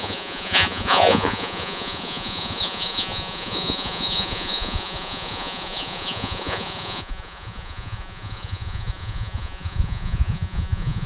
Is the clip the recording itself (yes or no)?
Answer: no